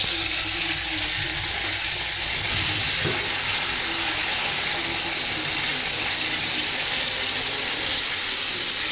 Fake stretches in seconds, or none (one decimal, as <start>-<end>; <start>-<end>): none